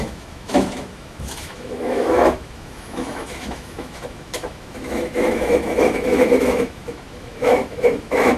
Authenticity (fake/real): fake